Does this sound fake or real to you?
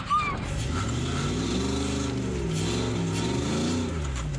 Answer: real